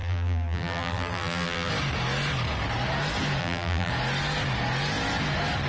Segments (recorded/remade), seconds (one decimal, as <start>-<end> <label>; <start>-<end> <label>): 0.0-1.7 remade; 1.7-3.4 recorded; 3.4-3.9 remade; 3.9-5.7 recorded